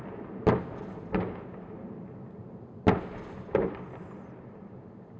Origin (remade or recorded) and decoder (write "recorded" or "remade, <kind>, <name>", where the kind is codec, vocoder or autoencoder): recorded